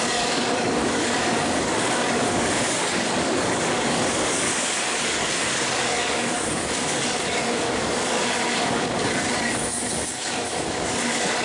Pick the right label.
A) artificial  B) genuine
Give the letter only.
A